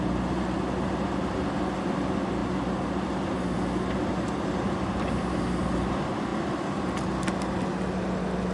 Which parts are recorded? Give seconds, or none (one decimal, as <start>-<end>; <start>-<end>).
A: 0.0-8.5